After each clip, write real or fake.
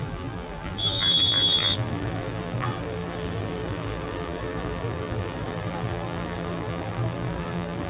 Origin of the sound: fake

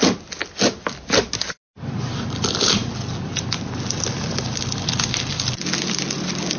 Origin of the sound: real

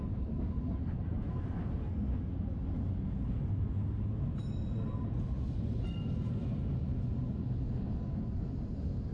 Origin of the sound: real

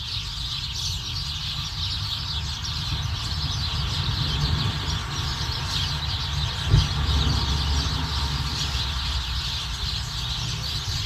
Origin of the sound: real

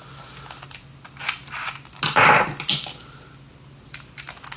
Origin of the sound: real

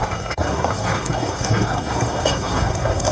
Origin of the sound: fake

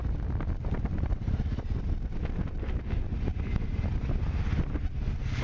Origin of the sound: real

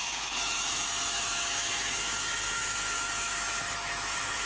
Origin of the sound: fake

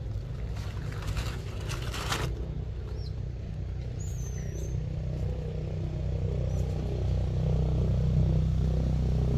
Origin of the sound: real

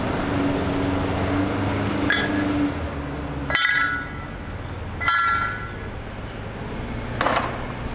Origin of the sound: real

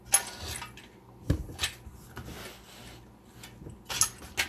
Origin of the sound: real